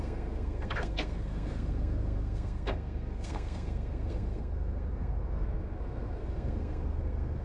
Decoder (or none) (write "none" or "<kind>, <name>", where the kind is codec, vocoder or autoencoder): codec, SNAC